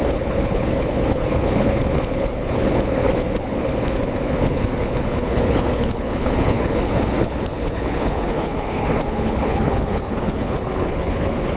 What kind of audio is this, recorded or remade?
remade